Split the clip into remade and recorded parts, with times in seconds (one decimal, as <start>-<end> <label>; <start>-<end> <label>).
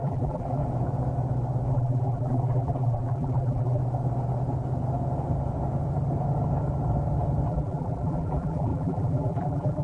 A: 0.0-0.6 remade; 0.6-1.7 recorded; 1.7-3.8 remade; 3.8-7.5 recorded; 7.5-9.8 remade